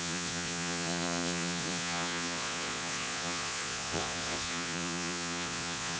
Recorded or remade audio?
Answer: remade